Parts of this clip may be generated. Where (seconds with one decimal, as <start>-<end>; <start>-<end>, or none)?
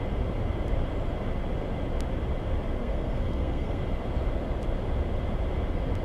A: 2.8-3.8